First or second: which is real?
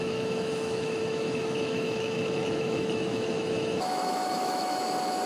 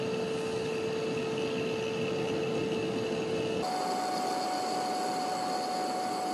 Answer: second